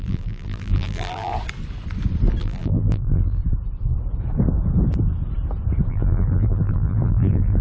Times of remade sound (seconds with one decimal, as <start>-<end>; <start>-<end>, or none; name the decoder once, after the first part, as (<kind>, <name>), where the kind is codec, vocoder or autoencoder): 0.0-1.3 (vocoder, BigVGAN v2); 2.4-3.4; 5.9-7.6